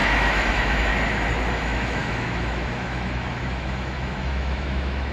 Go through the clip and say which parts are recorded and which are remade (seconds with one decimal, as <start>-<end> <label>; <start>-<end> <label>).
0.0-0.9 remade; 0.9-1.5 recorded; 1.5-5.1 remade